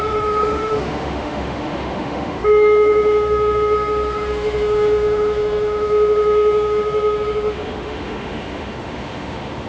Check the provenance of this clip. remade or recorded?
remade